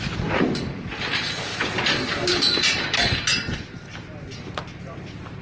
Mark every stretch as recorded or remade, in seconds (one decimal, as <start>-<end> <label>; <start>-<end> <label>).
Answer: 0.0-5.4 recorded